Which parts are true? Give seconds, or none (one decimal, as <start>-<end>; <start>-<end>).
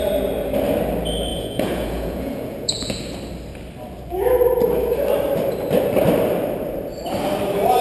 0.0-1.3; 3.0-7.8